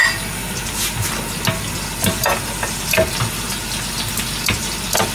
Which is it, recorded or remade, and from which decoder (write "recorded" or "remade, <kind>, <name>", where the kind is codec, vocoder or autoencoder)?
recorded